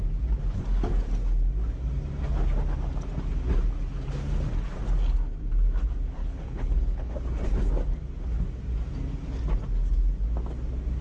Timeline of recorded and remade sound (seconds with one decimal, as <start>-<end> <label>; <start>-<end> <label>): 0.0-6.2 recorded; 6.2-7.1 remade; 7.1-11.0 recorded